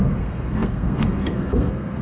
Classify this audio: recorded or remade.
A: remade